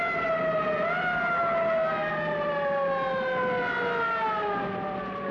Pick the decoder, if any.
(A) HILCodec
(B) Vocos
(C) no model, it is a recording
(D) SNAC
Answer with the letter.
C